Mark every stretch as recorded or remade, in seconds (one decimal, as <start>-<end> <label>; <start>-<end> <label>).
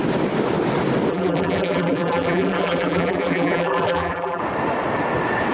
0.0-1.1 recorded; 1.1-4.4 remade; 4.4-5.5 recorded